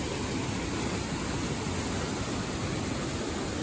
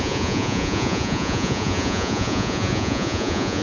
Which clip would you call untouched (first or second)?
first